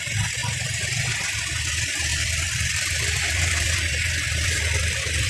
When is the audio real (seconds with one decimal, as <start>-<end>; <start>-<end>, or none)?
0.0-0.4; 1.0-2.1